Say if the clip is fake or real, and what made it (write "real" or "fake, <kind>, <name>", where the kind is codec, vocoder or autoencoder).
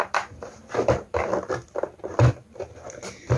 fake, vocoder, BigVGAN v2